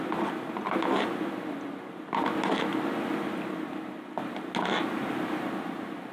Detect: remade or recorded recorded